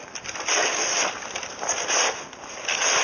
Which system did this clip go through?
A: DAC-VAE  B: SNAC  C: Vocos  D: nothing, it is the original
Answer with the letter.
D